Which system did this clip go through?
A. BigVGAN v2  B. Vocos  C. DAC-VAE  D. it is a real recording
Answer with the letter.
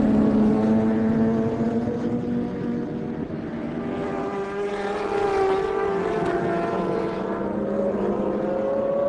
D